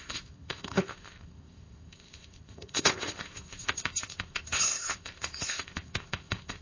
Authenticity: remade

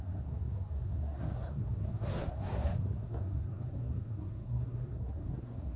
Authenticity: remade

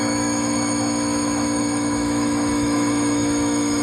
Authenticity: remade